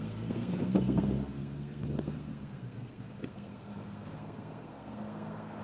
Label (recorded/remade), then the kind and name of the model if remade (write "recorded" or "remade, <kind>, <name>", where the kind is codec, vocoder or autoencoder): remade, codec, SNAC